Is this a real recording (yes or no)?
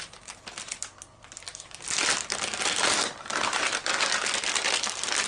yes